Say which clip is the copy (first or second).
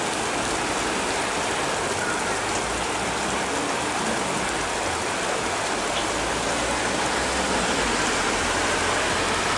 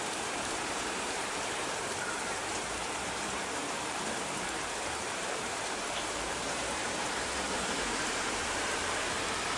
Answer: second